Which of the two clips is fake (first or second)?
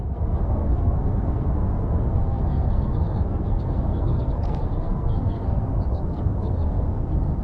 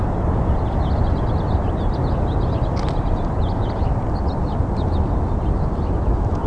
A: first